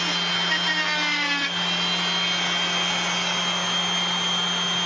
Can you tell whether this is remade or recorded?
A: recorded